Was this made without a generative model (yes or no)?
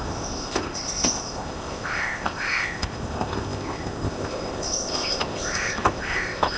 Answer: no